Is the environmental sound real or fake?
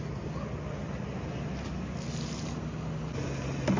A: real